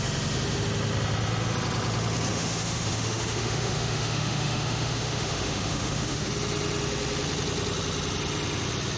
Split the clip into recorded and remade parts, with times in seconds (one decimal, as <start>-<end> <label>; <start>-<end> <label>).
0.0-2.3 recorded; 2.3-6.3 remade; 6.3-9.0 recorded